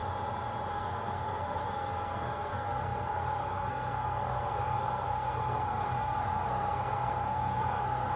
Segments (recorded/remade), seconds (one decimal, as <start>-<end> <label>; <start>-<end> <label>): 0.0-0.7 recorded; 0.7-8.2 remade